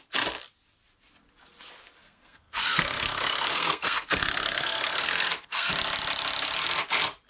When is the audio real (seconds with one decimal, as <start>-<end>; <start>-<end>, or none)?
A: 0.0-2.0; 5.7-7.3